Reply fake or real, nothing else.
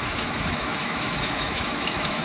fake